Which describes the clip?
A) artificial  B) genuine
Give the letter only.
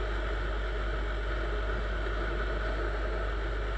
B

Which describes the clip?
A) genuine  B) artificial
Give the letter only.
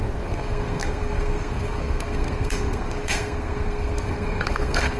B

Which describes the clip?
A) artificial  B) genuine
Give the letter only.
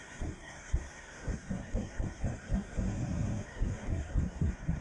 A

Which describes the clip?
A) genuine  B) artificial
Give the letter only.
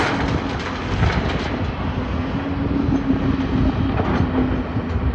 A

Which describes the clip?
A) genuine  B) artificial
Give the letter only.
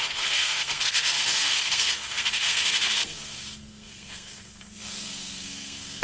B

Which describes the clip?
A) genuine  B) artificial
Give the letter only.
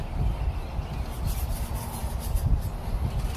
A